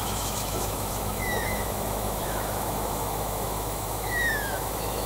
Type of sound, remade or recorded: remade